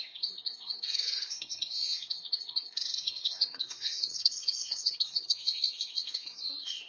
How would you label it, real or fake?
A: fake